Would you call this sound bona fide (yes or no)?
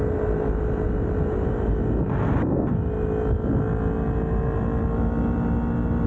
yes